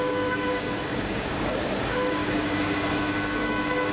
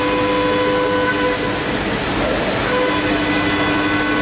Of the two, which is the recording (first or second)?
second